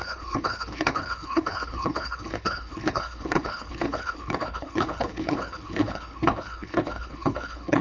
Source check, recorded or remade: remade